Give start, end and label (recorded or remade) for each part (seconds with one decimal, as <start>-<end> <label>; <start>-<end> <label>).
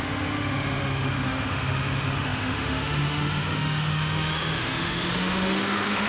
0.0-6.1 remade